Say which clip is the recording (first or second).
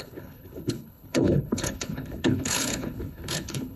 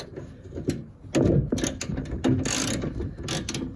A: second